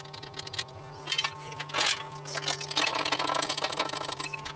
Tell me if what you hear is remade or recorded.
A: recorded